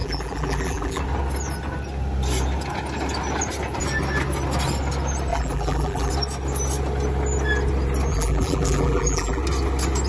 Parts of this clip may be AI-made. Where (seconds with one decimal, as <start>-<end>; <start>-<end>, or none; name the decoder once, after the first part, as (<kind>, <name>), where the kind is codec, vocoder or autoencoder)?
0.0-1.0 (vocoder, BigVGAN v2); 5.3-6.1; 8.1-9.4